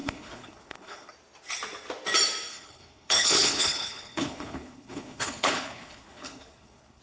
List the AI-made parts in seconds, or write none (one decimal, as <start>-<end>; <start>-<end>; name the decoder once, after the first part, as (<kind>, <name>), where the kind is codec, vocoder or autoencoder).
0.0-1.1 (codec, HILCodec); 2.5-7.0